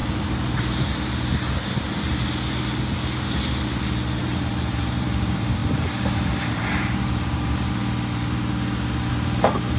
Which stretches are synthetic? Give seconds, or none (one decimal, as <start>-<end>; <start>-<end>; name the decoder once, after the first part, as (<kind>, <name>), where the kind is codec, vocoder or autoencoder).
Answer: 4.2-5.6 (vocoder, BigVGAN v2); 6.5-7.8; 9.1-9.8